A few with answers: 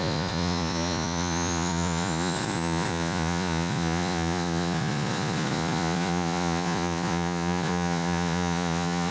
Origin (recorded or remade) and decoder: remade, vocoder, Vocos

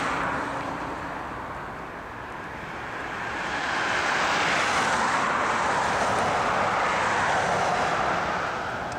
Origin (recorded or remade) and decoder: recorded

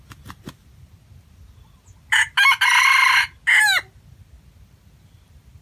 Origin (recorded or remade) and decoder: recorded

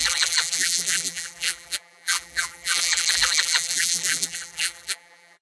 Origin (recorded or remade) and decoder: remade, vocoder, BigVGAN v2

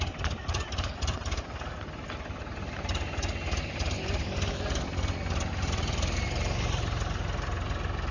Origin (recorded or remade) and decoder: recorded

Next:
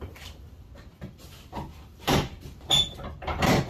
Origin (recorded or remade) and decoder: recorded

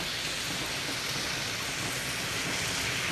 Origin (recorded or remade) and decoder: recorded